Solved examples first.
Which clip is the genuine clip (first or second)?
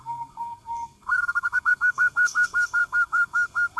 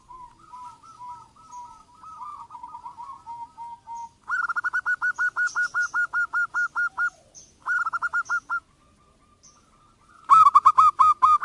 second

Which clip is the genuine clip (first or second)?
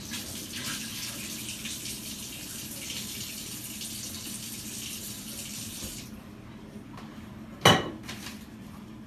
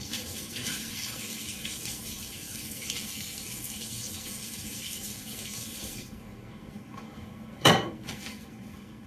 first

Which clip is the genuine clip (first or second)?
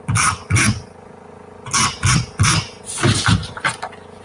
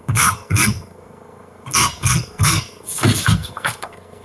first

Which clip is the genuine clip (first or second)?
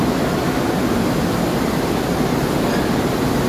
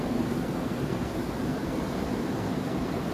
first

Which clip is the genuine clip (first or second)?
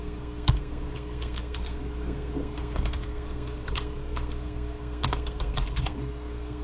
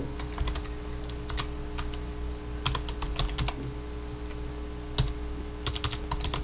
second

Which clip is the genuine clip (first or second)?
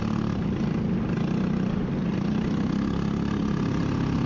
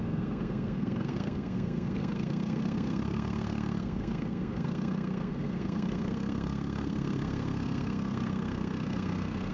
first